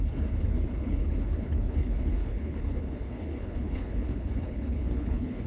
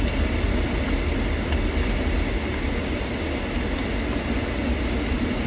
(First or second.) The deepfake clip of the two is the first